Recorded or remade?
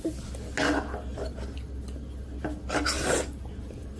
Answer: recorded